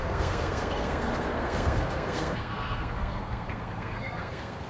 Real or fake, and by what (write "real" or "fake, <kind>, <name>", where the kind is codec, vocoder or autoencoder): fake, codec, SNAC